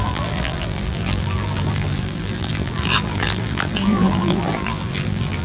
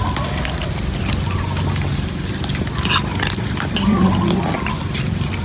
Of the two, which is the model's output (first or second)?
first